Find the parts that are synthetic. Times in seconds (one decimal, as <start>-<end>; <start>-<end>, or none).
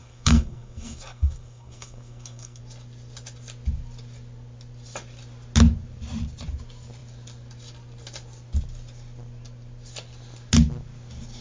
0.0-2.6